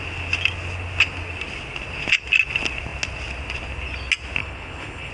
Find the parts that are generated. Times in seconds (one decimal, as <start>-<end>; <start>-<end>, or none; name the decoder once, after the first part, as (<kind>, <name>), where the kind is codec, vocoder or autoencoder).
4.4-5.1 (codec, HILCodec)